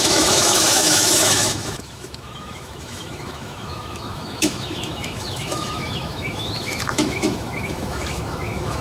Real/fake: fake